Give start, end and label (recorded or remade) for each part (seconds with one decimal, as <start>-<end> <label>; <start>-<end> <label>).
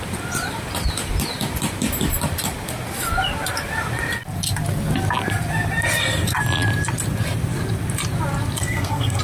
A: 0.0-8.6 recorded; 8.6-9.2 remade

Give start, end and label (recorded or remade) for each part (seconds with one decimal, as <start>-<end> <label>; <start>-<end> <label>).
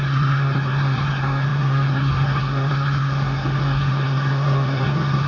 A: 0.0-5.3 remade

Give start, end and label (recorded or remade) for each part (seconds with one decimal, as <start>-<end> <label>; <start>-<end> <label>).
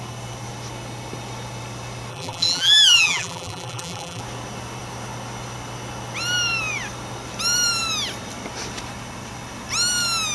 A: 0.0-2.1 recorded; 2.1-4.2 remade; 4.2-10.3 recorded